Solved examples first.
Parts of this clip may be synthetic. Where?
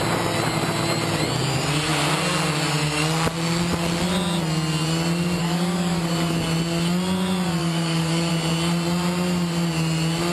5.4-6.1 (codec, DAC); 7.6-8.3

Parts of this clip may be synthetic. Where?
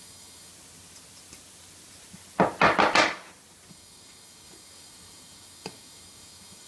0.0-0.5 (codec, DAC); 3.7-6.7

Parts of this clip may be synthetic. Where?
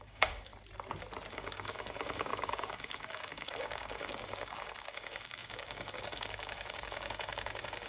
0.0-0.5 (codec, DAC); 1.3-7.9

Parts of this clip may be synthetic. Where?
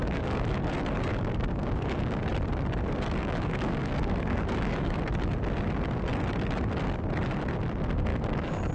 0.0-0.7 (codec, DAC); 1.1-2.2; 3.2-5.0; 8.1-8.7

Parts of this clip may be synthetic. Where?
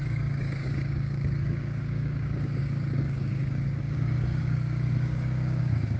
0.0-6.0 (codec, DAC)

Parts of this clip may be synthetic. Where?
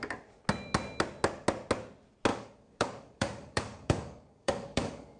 2.3-5.2 (codec, DAC)